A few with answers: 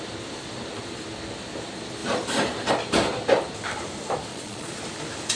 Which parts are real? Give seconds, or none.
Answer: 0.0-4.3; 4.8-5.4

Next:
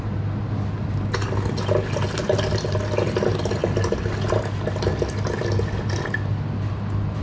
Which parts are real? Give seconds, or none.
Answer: 0.0-7.2

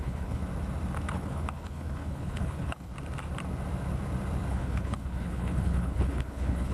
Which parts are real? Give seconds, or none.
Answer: 0.4-1.1; 2.9-4.5

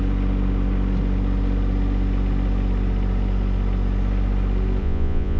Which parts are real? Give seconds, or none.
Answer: 0.0-4.8

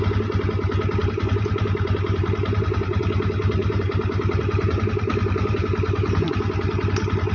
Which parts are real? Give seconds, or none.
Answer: 0.0-1.0; 3.0-3.6; 6.3-7.3

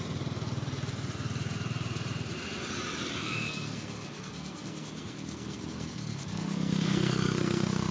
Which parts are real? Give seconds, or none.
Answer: 0.0-3.2

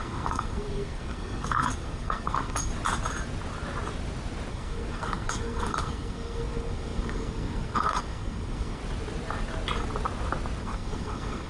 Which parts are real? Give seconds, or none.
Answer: 2.7-4.5; 8.8-10.6